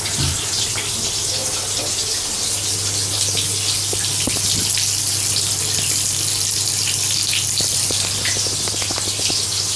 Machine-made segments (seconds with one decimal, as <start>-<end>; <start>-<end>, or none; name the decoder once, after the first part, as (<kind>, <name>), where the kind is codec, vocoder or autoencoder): none